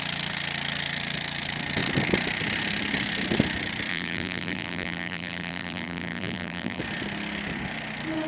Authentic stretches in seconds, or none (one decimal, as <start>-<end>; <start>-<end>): 0.0-3.9; 6.8-8.3